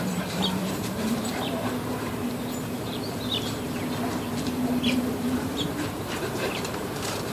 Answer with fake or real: fake